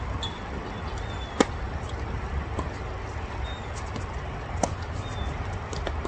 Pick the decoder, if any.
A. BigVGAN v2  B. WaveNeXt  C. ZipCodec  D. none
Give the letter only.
D